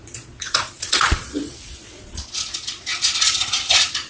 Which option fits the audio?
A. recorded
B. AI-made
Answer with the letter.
B